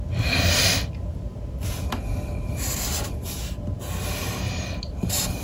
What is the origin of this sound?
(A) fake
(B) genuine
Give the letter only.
B